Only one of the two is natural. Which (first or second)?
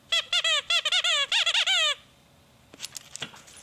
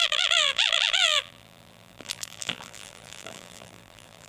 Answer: first